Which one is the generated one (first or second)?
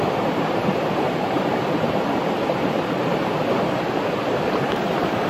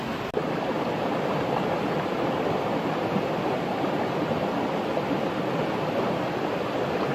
first